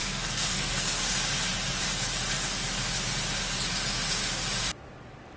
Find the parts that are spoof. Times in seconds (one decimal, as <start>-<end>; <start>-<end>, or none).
0.0-1.0